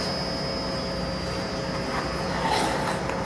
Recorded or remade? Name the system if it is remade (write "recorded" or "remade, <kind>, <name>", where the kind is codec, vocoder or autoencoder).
recorded